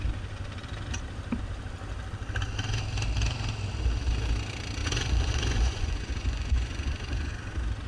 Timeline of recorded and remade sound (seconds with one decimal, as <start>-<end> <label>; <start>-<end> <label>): 0.0-4.8 recorded; 4.8-7.3 remade; 7.3-7.9 recorded